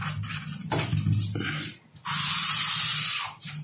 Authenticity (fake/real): real